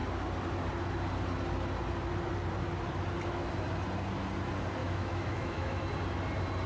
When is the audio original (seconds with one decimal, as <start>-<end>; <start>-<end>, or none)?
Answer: 0.0-4.8; 5.8-6.7